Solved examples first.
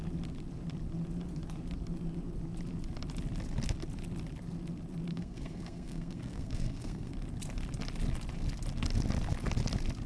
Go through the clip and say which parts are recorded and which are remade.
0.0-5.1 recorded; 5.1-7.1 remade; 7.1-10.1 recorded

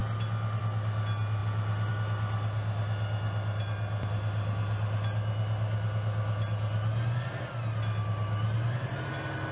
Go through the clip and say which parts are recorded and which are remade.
0.0-9.5 recorded

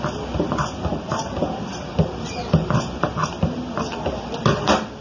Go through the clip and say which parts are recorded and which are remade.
0.0-3.2 recorded; 3.2-4.4 remade; 4.4-5.0 recorded